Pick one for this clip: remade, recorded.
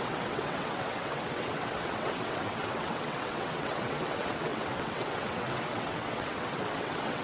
remade